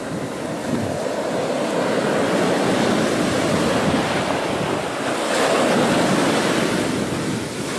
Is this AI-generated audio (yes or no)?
no